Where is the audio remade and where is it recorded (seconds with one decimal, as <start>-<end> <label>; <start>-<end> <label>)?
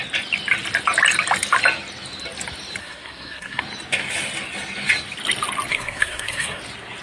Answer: 0.0-2.8 recorded; 2.8-3.6 remade; 3.6-5.7 recorded; 5.7-6.6 remade; 6.6-7.0 recorded